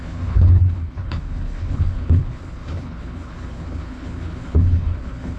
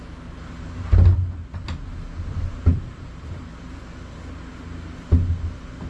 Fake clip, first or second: first